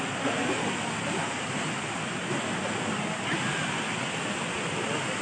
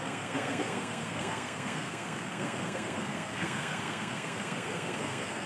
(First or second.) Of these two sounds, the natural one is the first